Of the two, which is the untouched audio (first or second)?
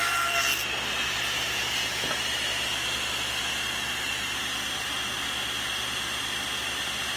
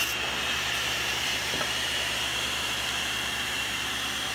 first